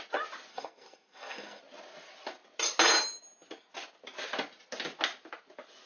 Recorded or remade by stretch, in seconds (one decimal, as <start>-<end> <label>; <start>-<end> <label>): 0.0-0.5 recorded; 0.5-1.6 remade; 1.6-5.9 recorded